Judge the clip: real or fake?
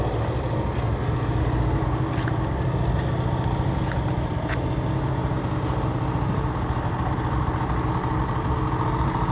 real